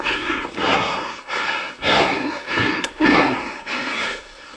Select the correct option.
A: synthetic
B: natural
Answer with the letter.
A